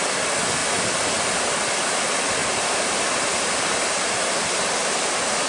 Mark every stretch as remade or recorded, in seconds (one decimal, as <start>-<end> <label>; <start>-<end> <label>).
0.0-2.4 recorded; 2.4-3.1 remade; 3.1-4.8 recorded; 4.8-5.5 remade